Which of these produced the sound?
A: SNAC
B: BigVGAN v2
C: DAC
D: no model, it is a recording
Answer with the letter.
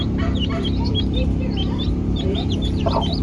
B